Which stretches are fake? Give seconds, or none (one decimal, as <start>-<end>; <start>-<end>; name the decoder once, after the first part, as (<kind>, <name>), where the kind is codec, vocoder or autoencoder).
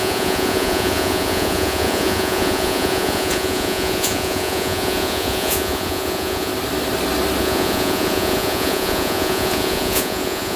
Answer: 0.0-6.5 (vocoder, Vocos); 7.4-10.6